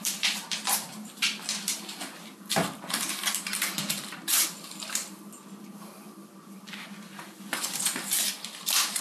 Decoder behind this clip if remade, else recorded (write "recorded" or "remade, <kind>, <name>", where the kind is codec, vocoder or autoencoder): remade, vocoder, BigVGAN v2